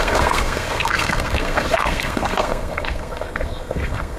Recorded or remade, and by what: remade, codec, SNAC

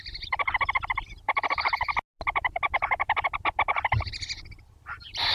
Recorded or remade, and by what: recorded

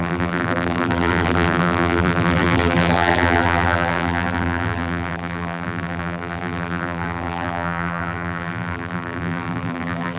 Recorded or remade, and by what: remade, vocoder, BigVGAN v2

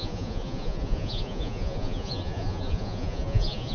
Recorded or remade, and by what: remade, vocoder, Vocos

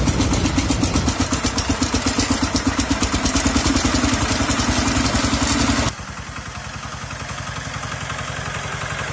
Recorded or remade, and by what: recorded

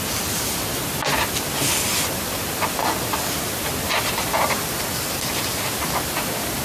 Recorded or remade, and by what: recorded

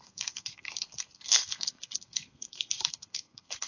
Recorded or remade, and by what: remade, codec, SNAC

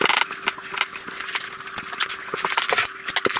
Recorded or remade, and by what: recorded